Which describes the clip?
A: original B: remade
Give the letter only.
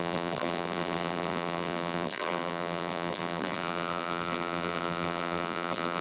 B